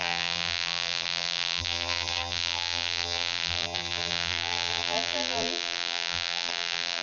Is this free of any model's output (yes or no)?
no